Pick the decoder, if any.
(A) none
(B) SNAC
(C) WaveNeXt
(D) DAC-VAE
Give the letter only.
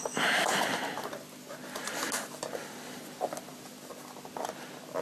A